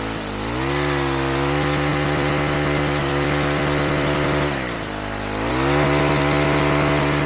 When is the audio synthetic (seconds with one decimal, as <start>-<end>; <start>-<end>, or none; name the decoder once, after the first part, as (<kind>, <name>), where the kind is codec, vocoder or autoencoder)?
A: 1.9-5.5 (vocoder, BigVGAN v2)